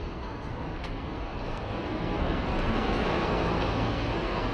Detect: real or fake fake